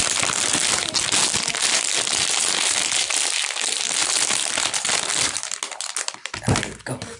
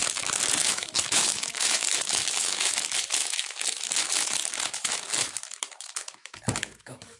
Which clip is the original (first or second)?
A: first